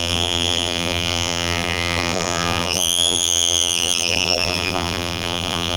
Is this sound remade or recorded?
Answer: remade